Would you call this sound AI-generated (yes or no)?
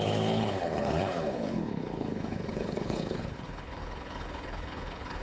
yes